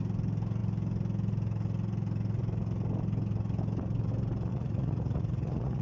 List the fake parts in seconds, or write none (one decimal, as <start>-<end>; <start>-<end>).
4.5-5.8